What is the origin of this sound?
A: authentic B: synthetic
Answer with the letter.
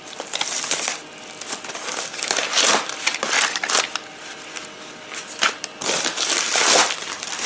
A